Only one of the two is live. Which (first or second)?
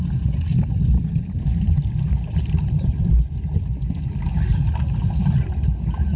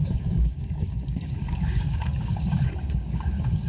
first